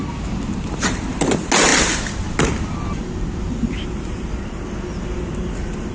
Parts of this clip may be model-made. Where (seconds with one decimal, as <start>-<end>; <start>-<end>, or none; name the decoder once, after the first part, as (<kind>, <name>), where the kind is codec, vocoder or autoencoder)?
none